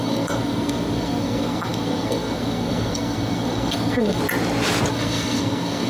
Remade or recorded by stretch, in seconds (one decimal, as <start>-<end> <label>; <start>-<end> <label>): 0.0-4.2 remade; 4.2-4.9 recorded; 4.9-5.9 remade